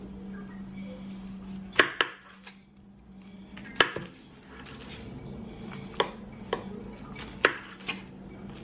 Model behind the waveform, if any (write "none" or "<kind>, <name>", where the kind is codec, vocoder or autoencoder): none